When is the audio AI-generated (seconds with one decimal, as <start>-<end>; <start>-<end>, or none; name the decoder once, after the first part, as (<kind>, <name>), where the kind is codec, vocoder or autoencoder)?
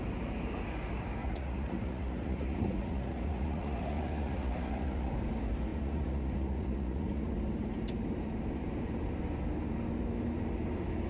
1.2-5.1 (vocoder, Vocos); 5.7-7.3